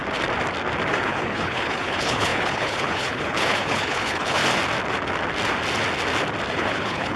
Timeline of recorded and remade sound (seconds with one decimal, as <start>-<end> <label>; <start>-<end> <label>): 0.0-0.9 recorded; 0.9-4.4 remade; 4.4-6.5 recorded; 6.5-7.2 remade